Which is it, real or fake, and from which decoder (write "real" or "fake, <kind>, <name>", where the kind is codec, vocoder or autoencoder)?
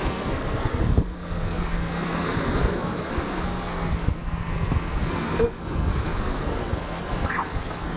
fake, codec, SNAC